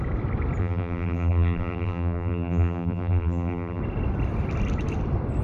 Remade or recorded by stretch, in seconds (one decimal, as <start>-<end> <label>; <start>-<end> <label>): 0.0-0.6 recorded; 0.6-3.8 remade; 3.8-5.4 recorded